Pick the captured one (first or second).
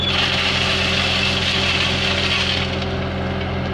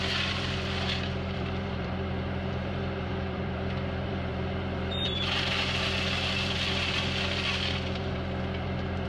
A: first